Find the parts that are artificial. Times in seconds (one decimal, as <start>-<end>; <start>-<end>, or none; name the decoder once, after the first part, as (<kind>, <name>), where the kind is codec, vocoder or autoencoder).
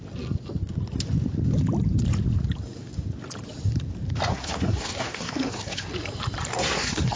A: 4.3-5.9 (codec, SNAC); 6.5-7.2